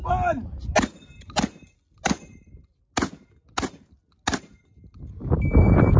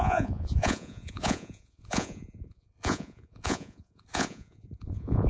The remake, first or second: second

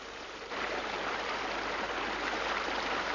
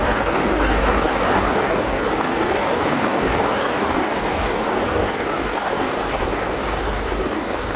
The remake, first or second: second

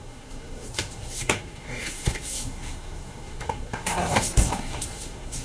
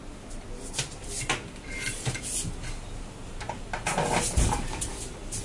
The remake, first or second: first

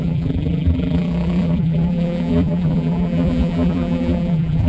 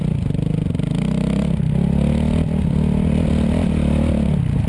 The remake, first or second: first